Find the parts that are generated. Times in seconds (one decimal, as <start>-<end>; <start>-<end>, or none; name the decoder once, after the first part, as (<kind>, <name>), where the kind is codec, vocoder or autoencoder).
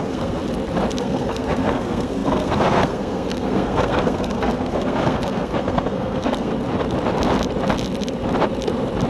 0.0-0.4 (codec, SNAC); 1.0-6.5